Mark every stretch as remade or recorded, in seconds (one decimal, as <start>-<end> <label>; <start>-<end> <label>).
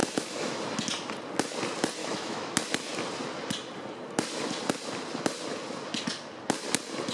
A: 0.0-0.6 remade; 0.6-2.0 recorded; 2.0-2.5 remade; 2.5-7.1 recorded